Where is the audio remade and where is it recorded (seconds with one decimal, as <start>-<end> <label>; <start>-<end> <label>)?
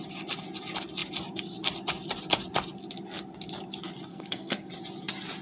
0.0-4.1 recorded; 4.1-4.7 remade; 4.7-5.4 recorded